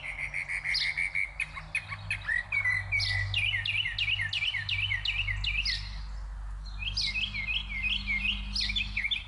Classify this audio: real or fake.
real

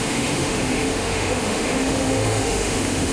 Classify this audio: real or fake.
fake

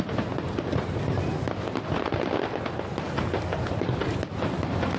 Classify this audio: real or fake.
real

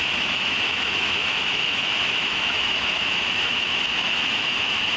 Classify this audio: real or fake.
fake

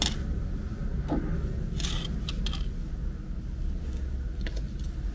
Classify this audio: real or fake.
real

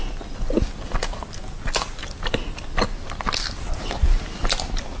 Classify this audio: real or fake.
real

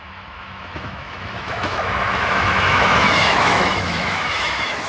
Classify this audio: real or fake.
fake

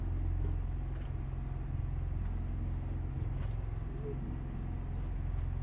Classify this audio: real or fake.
real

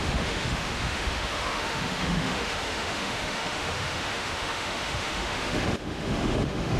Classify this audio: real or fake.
fake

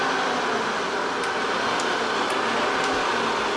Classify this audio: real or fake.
real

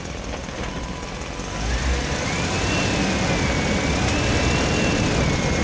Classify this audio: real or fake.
real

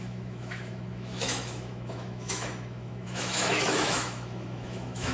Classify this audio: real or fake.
fake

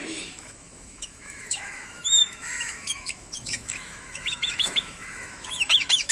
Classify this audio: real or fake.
fake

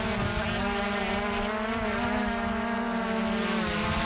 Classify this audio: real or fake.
real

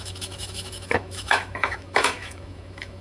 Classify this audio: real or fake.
fake